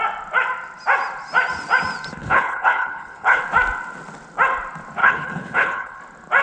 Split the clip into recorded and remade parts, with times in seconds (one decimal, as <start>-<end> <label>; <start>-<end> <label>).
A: 0.0-2.2 recorded; 2.2-3.4 remade; 3.4-5.0 recorded; 5.0-6.0 remade; 6.0-6.4 recorded